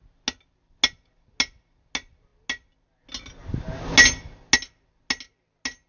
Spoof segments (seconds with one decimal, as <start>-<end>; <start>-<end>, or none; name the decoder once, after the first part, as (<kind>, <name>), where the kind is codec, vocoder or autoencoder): none